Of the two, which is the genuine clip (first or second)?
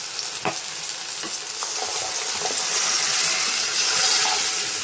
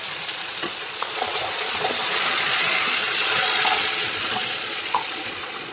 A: first